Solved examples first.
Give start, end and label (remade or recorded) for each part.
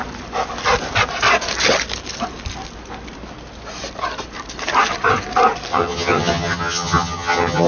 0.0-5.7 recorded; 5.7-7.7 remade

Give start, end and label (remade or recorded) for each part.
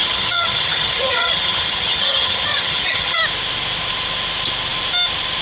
0.0-3.2 remade; 3.2-5.4 recorded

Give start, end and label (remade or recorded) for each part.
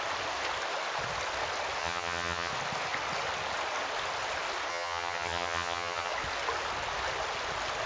0.0-1.8 recorded; 1.8-2.5 remade; 2.5-4.7 recorded; 4.7-6.1 remade; 6.1-7.9 recorded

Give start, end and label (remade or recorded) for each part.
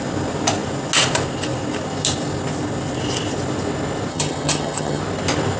0.0-4.1 recorded; 4.1-5.0 remade; 5.0-5.6 recorded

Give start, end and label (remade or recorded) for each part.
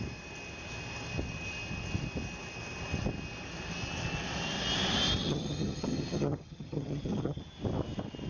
0.0-5.2 recorded; 5.2-7.4 remade; 7.4-8.3 recorded